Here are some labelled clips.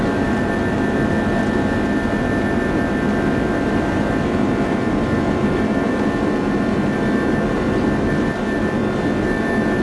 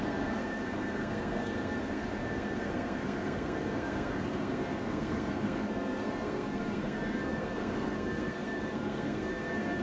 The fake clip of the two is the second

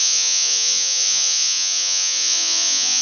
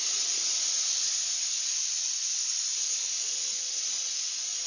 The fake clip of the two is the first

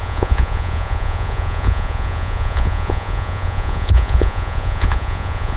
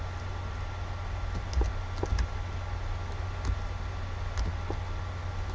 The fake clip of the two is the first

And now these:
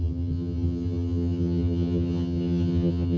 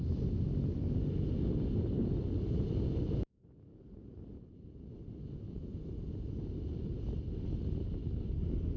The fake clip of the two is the first